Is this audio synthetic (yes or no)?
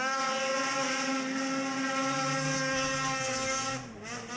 no